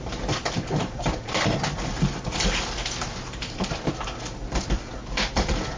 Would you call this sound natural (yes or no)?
no